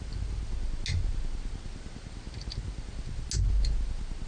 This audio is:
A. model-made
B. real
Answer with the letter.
B